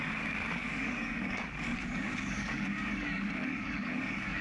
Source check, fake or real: fake